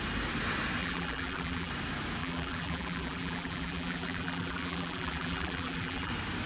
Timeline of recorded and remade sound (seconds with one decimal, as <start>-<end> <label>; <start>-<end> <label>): 0.0-0.8 recorded; 0.8-1.7 remade; 1.7-2.2 recorded; 2.2-6.1 remade; 6.1-6.5 recorded